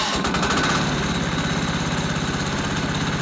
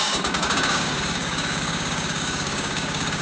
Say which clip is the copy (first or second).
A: second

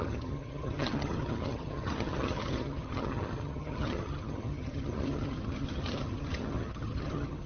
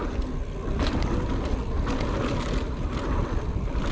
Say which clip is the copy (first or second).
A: first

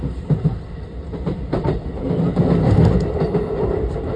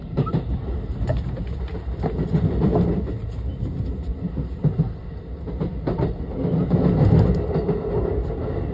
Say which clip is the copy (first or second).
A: first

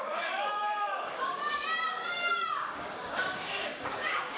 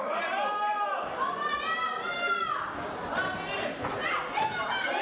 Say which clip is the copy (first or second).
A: first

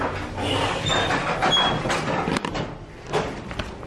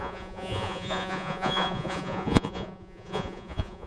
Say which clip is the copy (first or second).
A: second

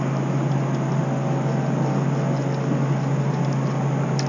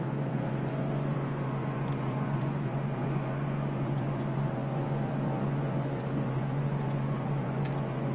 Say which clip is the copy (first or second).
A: second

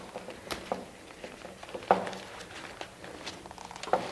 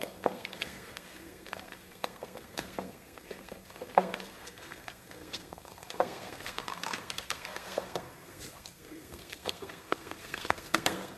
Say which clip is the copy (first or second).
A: second